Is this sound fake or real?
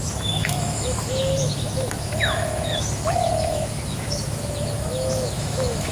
fake